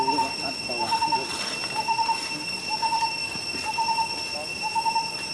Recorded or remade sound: recorded